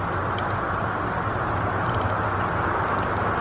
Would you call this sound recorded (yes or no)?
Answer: yes